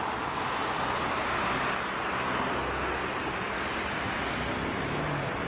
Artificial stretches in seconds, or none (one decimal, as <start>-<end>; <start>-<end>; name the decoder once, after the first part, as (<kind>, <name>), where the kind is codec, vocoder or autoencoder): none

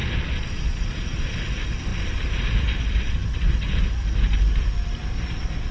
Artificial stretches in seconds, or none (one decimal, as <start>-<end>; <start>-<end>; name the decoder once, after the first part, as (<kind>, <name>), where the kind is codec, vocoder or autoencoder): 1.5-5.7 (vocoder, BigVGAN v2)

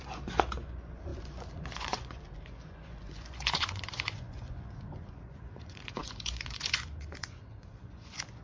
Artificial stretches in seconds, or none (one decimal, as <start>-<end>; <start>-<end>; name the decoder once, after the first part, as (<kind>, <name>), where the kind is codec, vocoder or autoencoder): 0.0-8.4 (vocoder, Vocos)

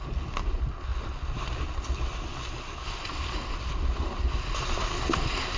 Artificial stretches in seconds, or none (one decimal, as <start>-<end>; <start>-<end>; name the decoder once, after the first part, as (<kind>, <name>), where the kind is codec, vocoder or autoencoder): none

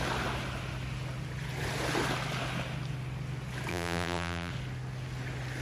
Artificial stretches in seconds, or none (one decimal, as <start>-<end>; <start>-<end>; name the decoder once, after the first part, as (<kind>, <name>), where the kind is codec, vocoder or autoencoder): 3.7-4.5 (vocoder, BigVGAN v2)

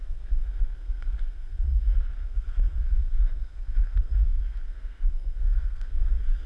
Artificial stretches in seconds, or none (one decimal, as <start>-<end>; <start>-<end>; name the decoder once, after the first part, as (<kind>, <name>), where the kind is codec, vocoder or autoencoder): 0.0-6.5 (codec, SNAC)